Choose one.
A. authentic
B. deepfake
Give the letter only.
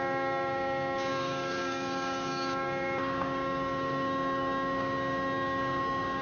B